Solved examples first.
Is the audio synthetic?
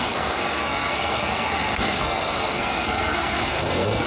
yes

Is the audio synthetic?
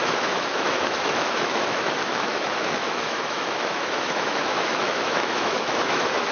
yes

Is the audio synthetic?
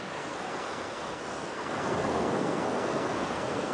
yes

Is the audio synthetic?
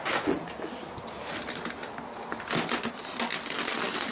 no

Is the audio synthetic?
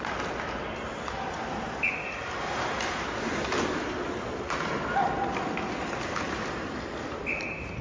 no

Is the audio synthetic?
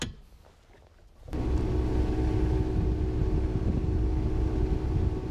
no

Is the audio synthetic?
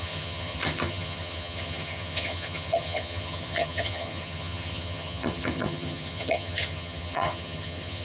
yes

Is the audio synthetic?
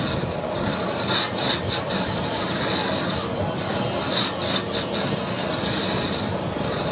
no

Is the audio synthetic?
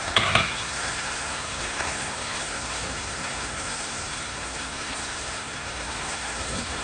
yes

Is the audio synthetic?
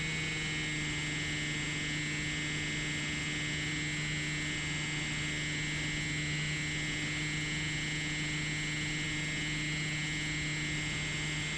no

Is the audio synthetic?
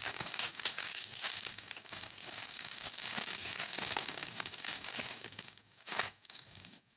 yes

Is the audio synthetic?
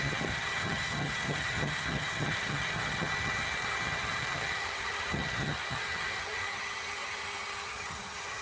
yes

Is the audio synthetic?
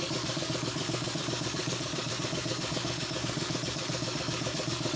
yes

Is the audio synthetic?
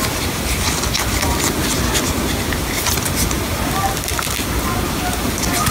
no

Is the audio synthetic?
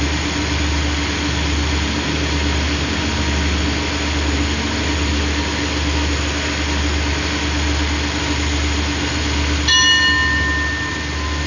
no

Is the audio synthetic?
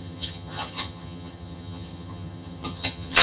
yes